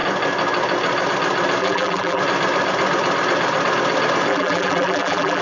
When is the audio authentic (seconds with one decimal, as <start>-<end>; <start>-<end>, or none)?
0.0-1.6; 2.2-4.3

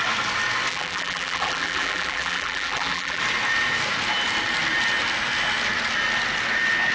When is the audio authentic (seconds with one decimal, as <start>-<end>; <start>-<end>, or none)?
0.0-0.7; 3.2-6.9

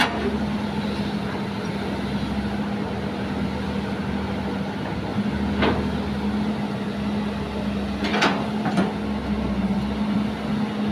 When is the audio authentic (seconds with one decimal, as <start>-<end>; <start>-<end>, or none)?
0.0-10.9

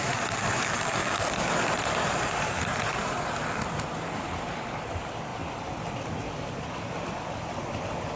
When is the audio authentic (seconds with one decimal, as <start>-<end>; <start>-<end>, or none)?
1.0-1.5; 5.3-7.0

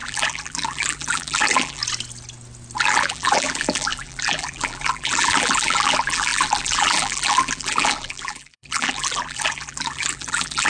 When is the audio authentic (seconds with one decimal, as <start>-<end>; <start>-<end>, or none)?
1.8-2.8

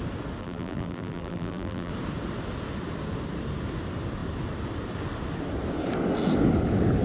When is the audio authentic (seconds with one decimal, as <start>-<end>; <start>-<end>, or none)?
0.0-0.4; 1.9-7.0

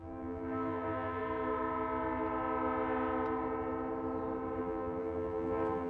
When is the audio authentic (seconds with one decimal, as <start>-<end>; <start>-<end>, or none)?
1.2-4.6

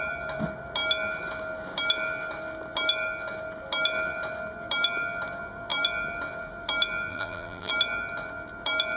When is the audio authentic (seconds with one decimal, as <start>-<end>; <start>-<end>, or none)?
0.0-7.1; 7.7-9.0